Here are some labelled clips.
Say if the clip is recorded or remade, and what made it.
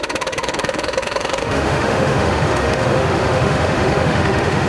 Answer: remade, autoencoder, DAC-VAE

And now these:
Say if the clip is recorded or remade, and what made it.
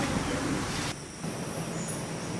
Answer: recorded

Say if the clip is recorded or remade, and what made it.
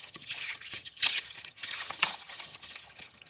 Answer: remade, vocoder, HiFi-GAN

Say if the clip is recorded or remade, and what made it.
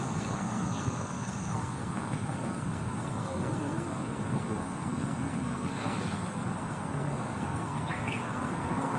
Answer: remade, codec, SNAC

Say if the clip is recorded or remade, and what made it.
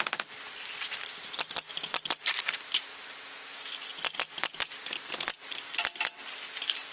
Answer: recorded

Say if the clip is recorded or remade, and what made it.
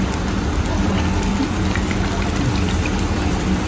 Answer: recorded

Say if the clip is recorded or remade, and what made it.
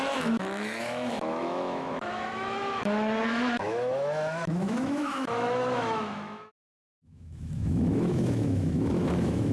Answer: remade, autoencoder, DAC-VAE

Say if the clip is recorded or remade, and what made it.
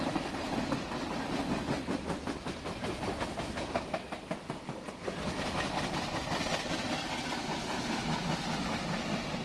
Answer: recorded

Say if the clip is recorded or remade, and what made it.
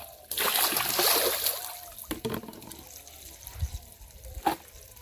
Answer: recorded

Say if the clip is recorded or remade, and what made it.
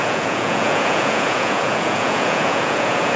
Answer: remade, vocoder, Vocos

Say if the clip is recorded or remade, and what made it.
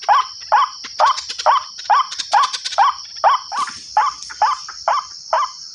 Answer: recorded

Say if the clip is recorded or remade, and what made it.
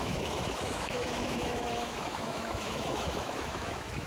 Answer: remade, autoencoder, DAC-VAE